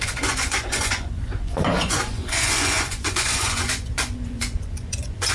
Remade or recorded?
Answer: remade